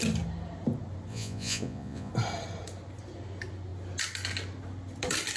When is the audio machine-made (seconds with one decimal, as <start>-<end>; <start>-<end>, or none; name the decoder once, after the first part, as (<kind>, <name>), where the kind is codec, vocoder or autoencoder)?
1.1-2.1 (vocoder, Vocos)